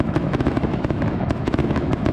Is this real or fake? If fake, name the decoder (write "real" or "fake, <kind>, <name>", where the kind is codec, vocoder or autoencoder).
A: fake, autoencoder, DAC-VAE